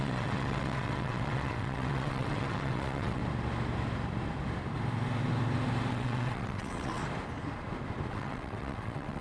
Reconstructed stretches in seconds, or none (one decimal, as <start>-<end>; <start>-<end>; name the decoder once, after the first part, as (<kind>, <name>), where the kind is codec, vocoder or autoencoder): 0.0-3.2 (vocoder, WaveNeXt); 5.9-7.0; 8.1-9.2